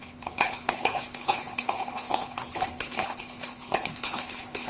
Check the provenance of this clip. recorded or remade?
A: remade